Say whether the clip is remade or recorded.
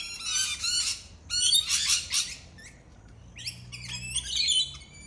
recorded